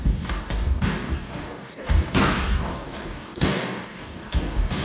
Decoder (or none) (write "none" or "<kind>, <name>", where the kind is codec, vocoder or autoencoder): codec, DAC